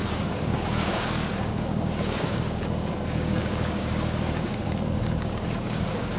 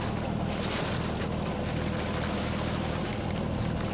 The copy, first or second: first